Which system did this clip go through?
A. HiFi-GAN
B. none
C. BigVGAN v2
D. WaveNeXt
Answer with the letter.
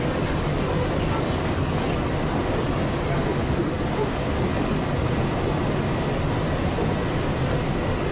B